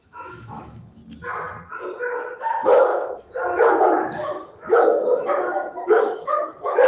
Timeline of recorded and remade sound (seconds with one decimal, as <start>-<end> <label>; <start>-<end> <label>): 0.0-1.0 remade; 1.0-2.4 recorded; 2.4-6.9 remade